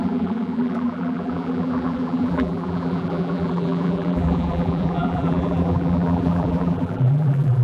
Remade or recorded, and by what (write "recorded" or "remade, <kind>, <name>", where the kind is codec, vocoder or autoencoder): remade, vocoder, BigVGAN v2